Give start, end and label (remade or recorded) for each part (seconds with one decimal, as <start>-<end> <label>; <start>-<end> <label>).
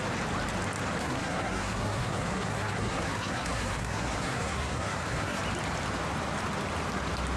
0.0-1.0 recorded; 1.0-5.4 remade; 5.4-7.4 recorded